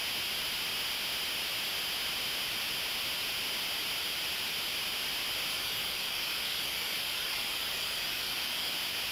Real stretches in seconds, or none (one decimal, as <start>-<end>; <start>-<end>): 0.0-5.5; 8.7-9.1